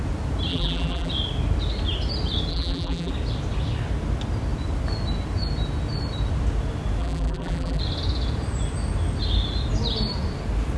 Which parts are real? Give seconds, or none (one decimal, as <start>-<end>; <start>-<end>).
0.0-0.5; 1.1-2.5; 3.1-7.0; 7.8-10.8